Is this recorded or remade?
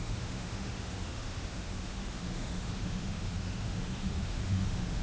remade